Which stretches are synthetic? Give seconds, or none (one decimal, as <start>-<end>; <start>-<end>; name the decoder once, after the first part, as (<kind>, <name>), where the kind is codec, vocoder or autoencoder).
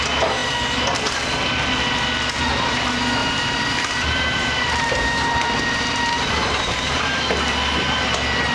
3.2-7.0 (vocoder, BigVGAN v2)